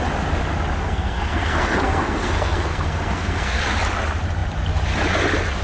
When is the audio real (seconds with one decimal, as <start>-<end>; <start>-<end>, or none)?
0.0-0.8; 3.6-5.6